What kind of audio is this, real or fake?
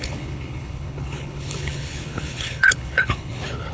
fake